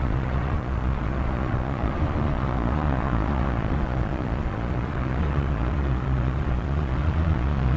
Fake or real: fake